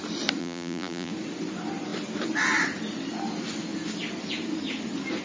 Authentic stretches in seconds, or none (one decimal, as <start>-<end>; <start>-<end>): 0.0-0.4; 1.1-5.2